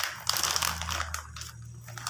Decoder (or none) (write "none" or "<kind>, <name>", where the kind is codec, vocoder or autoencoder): none